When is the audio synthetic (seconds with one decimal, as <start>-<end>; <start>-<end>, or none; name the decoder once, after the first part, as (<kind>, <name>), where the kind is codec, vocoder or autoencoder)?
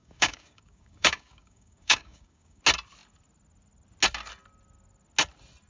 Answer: 0.0-2.6 (codec, DAC)